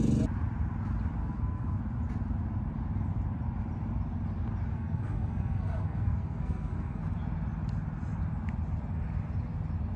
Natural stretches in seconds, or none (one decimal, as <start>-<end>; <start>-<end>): 0.0-1.2; 1.8-4.7; 7.0-10.0